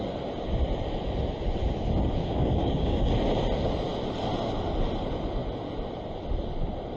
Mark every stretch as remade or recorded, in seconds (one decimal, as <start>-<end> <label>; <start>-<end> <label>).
0.0-2.2 recorded; 2.2-3.1 remade; 3.1-7.0 recorded